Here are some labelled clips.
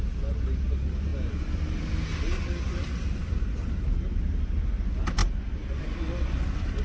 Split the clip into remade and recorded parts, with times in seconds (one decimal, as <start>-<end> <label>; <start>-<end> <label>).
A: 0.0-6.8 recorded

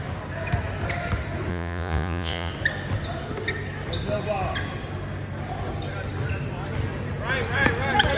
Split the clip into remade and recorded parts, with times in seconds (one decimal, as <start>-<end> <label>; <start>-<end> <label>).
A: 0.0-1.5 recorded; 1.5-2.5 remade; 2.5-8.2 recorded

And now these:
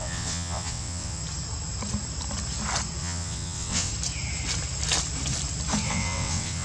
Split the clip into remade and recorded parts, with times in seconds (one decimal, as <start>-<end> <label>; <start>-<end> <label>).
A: 0.0-1.2 remade; 1.2-3.0 recorded; 3.0-3.9 remade; 3.9-5.9 recorded; 5.9-6.6 remade

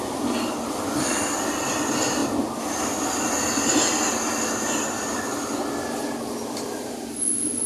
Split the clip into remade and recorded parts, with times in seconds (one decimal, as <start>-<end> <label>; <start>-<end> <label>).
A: 0.0-7.7 recorded